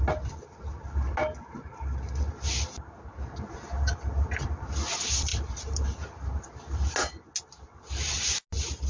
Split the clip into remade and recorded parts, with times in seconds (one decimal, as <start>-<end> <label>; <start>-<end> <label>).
0.0-8.9 recorded